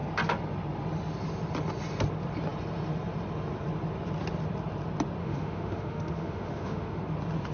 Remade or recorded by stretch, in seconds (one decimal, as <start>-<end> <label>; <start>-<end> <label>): 0.0-5.2 recorded; 5.2-7.0 remade; 7.0-7.5 recorded